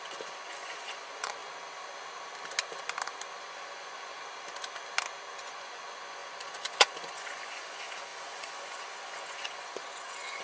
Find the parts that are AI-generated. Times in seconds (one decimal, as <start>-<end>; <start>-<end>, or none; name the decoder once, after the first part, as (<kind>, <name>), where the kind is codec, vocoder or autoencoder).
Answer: 0.0-1.4 (vocoder, Vocos); 3.4-4.2; 5.5-10.4